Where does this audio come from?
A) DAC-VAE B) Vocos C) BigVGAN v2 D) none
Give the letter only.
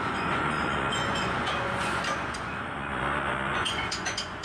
B